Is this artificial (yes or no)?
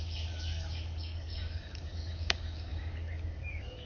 yes